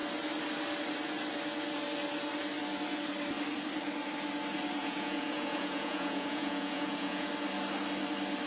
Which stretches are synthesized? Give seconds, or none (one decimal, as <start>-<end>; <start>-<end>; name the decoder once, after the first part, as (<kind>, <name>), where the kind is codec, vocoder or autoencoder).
4.8-7.3 (vocoder, Vocos)